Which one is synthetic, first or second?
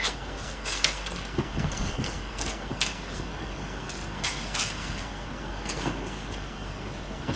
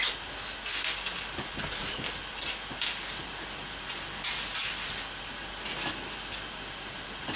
first